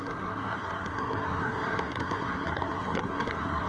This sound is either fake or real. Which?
fake